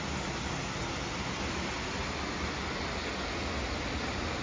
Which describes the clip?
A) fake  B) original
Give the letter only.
B